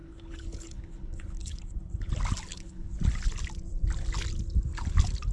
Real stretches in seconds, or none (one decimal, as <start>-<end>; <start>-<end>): 2.1-2.5; 3.0-5.3